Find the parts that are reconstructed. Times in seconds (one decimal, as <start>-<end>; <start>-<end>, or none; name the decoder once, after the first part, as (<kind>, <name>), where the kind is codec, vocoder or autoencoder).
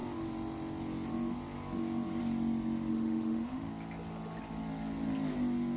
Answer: 2.9-3.7 (autoencoder, DAC-VAE)